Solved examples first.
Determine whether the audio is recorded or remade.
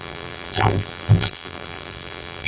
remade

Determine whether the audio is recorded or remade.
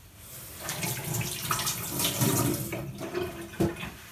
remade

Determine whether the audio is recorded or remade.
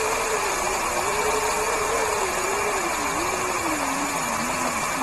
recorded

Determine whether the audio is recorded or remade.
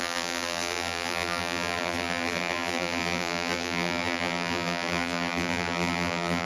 remade